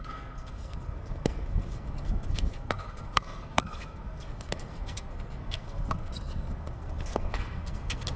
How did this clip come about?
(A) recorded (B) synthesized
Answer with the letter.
B